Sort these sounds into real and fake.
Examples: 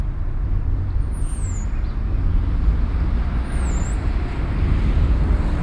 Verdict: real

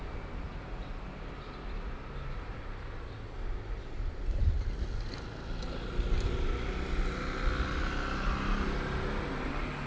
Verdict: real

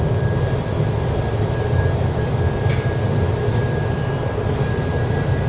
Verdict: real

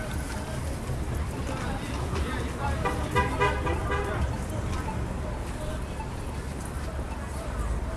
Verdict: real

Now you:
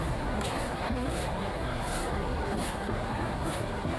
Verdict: fake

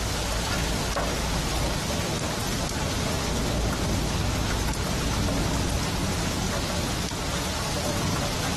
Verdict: real